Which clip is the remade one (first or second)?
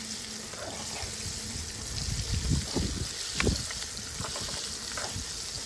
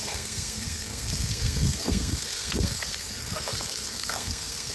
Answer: second